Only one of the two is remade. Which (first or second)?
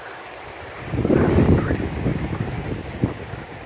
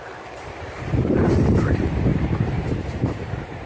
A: second